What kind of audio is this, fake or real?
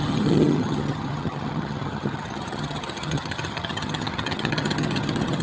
fake